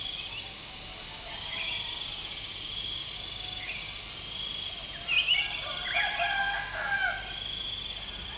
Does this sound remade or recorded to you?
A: recorded